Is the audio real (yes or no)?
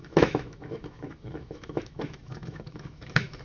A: no